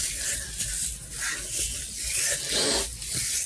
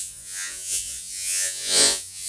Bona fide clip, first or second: first